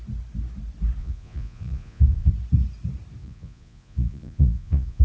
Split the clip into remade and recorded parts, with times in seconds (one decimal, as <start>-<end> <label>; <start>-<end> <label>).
0.0-1.0 recorded; 1.0-2.3 remade; 2.3-3.2 recorded; 3.2-5.0 remade